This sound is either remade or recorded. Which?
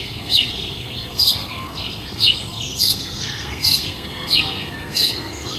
remade